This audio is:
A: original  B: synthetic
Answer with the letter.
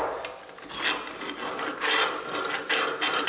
A